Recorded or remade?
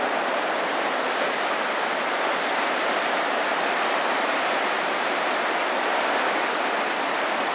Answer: remade